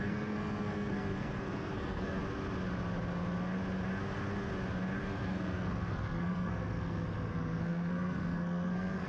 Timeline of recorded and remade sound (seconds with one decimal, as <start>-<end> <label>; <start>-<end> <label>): 0.0-2.2 remade; 2.2-5.0 recorded; 5.0-9.1 remade